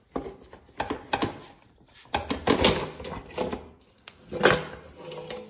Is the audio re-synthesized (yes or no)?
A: no